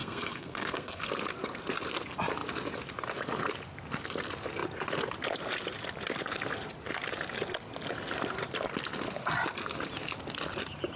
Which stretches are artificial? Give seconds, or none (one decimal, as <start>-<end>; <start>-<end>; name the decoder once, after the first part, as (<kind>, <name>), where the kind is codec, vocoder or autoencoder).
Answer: 0.0-1.1 (codec, SNAC)

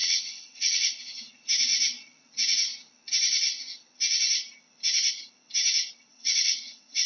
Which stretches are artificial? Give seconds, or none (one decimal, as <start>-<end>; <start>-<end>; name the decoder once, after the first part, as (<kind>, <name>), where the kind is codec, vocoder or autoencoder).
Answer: 0.0-1.0 (vocoder, WaveNeXt); 6.1-7.1

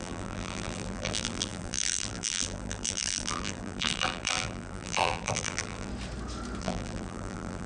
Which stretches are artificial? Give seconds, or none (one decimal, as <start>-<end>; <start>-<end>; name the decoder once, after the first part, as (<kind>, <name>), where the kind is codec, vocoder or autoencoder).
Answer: 0.0-5.9 (vocoder, BigVGAN v2); 6.6-7.7

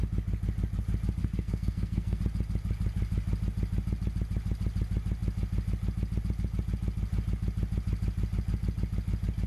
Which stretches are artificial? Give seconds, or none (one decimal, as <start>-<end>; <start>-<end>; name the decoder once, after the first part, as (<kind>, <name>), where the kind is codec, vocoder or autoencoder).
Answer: 1.2-2.2 (codec, SNAC)

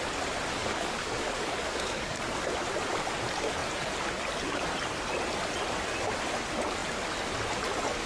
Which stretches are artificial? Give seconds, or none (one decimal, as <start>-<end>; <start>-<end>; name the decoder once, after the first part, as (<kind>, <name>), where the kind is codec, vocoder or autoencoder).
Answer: 0.6-2.2 (codec, DAC)

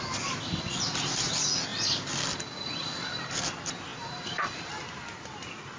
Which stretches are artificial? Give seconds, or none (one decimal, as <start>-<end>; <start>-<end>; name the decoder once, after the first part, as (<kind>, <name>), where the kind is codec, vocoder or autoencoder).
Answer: 3.9-4.7 (vocoder, BigVGAN v2)

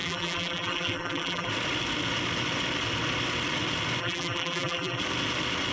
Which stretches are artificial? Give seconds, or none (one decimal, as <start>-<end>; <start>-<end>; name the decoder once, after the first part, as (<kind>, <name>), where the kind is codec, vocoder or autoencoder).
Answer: 0.0-1.5 (vocoder, BigVGAN v2); 4.0-5.0

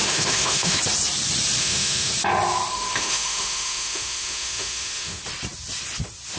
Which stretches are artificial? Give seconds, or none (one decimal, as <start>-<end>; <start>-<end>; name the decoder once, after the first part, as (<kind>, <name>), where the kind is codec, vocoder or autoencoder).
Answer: 0.0-0.8 (autoencoder, DAC-VAE); 1.6-2.1; 2.7-5.2